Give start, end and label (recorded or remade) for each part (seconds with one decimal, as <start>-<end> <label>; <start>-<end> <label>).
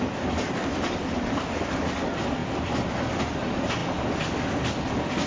0.0-5.3 recorded